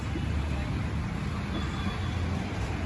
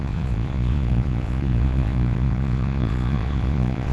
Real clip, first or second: first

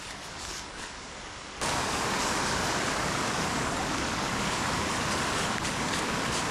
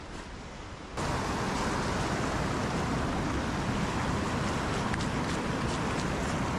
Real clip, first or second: second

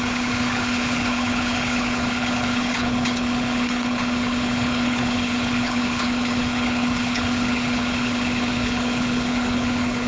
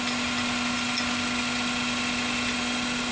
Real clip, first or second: second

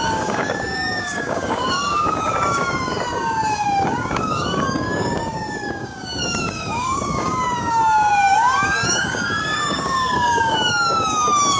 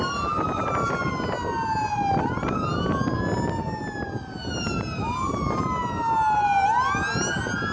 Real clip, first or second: second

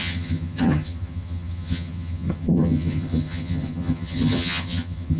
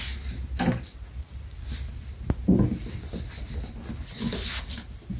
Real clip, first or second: second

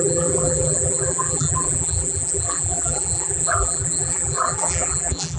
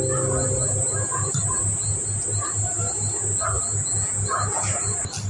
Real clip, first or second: second